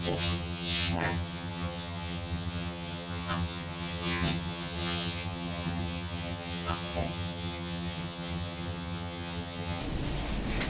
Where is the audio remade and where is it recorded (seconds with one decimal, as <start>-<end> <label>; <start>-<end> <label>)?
0.0-9.8 remade; 9.8-10.7 recorded